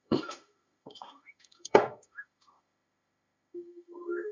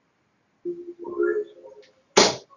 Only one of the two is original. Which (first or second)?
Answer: second